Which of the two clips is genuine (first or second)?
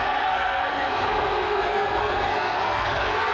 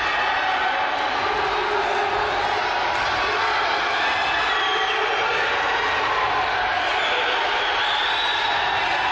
second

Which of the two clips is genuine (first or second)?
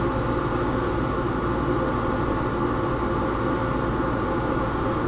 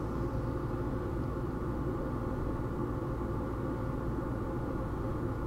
first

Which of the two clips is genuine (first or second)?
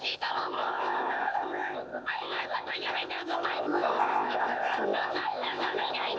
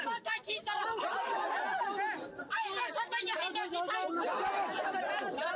second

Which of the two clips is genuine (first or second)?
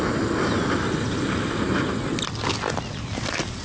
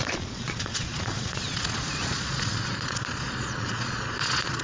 first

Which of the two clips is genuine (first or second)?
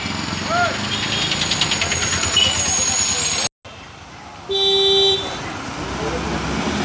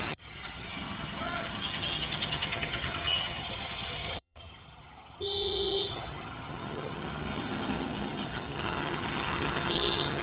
first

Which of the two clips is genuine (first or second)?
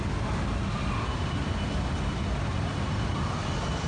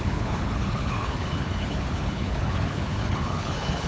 first